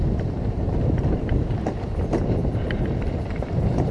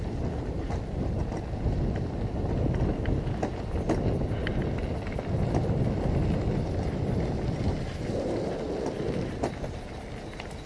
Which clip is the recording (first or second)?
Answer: second